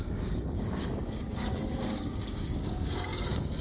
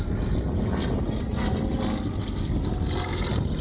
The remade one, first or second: first